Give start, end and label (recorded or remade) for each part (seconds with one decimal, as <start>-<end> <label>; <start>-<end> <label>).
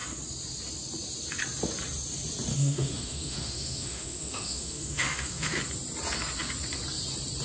0.0-2.5 recorded; 2.5-5.6 remade; 5.6-7.4 recorded